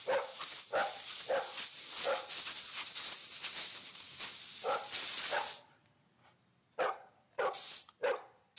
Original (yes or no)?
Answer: yes